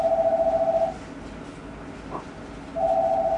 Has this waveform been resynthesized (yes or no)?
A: no